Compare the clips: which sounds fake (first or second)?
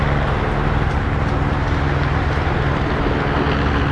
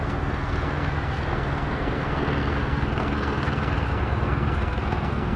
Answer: second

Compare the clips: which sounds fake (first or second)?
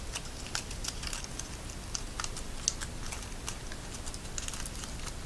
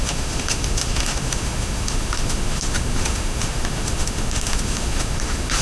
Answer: second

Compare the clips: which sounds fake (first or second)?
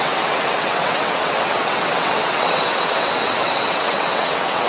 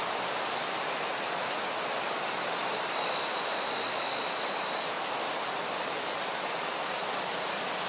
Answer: first